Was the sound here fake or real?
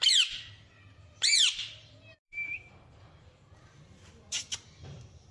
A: fake